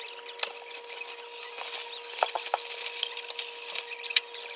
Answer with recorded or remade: recorded